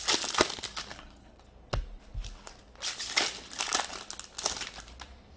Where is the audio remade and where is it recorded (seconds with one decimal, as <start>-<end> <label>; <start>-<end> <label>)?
0.0-0.9 recorded; 0.9-1.4 remade; 1.4-5.4 recorded